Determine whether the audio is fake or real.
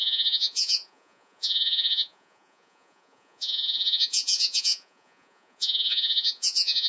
fake